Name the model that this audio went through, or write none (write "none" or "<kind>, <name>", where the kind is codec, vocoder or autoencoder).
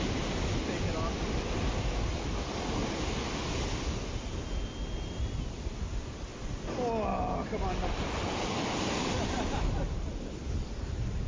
none